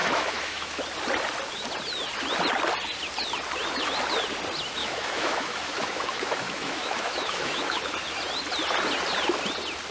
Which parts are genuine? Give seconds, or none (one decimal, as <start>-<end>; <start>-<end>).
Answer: 0.8-4.8; 7.8-9.9